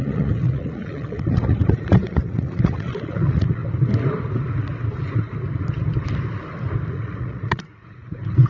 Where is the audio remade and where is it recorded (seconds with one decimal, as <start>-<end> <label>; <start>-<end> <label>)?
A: 0.0-3.6 remade; 3.6-6.9 recorded; 6.9-8.5 remade